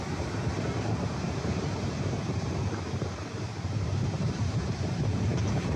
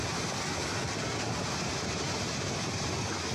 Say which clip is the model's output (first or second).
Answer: first